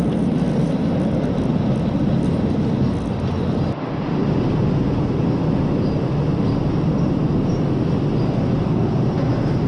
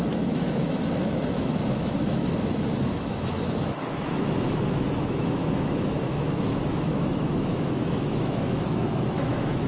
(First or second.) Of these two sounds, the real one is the first